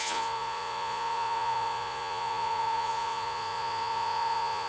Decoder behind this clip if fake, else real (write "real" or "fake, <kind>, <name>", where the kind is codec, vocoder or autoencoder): fake, vocoder, Vocos